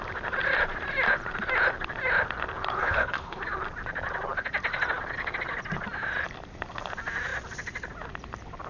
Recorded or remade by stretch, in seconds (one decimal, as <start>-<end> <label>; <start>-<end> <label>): 0.0-2.8 recorded; 2.8-3.4 remade; 3.4-8.7 recorded